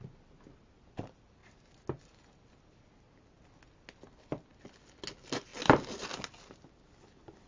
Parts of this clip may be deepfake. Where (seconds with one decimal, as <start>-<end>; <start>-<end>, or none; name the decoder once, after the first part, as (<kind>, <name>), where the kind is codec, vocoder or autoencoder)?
none